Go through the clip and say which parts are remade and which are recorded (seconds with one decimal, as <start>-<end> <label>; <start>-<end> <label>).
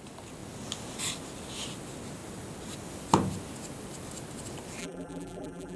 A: 0.0-4.8 recorded; 4.8-5.8 remade